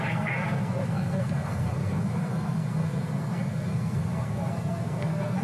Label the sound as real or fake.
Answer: fake